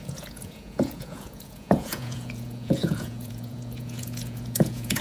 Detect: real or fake fake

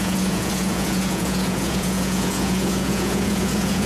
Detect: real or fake fake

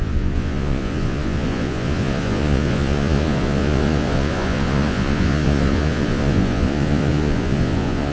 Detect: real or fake fake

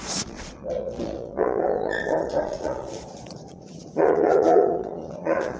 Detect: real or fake fake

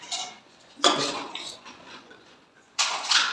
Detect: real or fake fake